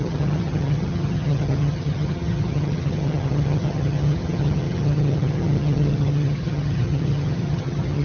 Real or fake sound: fake